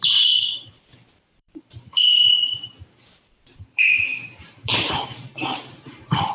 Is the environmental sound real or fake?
fake